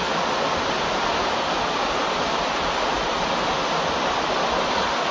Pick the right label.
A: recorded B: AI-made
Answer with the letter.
A